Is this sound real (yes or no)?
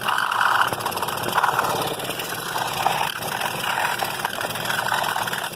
no